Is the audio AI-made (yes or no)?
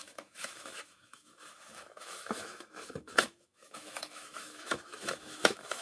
yes